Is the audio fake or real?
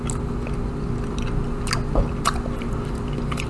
real